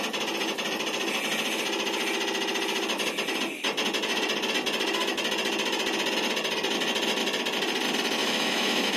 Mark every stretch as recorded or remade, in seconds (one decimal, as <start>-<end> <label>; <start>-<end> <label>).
0.0-8.2 recorded; 8.2-9.0 remade